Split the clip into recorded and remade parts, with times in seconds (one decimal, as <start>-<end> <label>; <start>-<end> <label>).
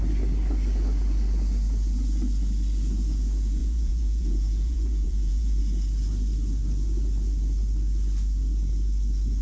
0.0-3.6 recorded; 3.6-5.6 remade; 5.6-9.4 recorded